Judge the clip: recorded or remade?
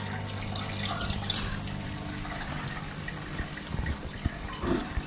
recorded